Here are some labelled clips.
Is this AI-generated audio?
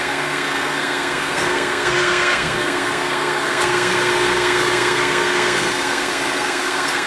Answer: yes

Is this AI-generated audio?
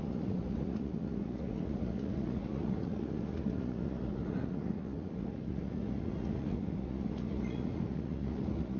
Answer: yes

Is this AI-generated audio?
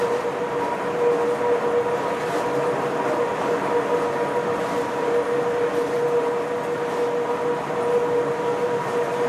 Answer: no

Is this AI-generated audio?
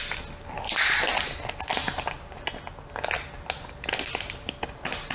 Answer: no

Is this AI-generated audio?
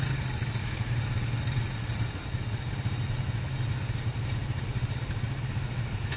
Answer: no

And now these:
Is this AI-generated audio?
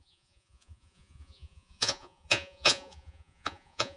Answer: yes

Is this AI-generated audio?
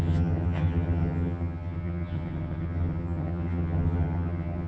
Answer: yes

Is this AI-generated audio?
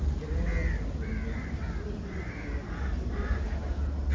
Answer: no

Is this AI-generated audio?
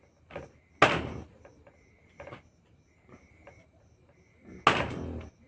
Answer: no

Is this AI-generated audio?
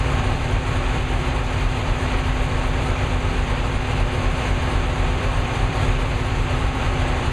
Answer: yes